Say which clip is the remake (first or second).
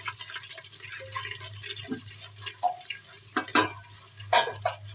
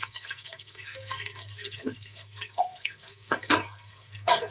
second